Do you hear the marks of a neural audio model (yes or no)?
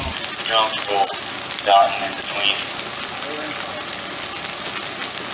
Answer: no